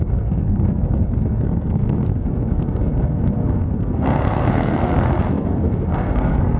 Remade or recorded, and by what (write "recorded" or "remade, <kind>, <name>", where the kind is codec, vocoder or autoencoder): remade, codec, SNAC